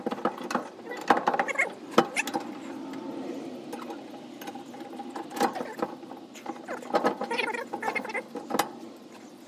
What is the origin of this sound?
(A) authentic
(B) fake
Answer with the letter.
A